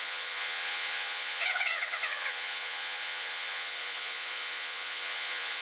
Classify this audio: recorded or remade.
remade